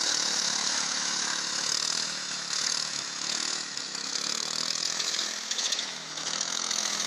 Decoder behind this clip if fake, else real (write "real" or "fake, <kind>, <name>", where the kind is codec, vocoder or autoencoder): fake, autoencoder, DAC-VAE